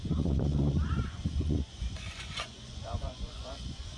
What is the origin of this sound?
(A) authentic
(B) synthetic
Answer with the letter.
B